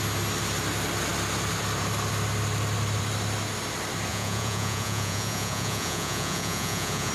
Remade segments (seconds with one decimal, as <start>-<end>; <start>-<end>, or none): 4.1-7.1